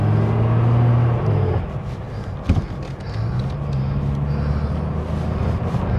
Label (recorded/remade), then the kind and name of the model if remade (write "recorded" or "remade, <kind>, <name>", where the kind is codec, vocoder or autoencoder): recorded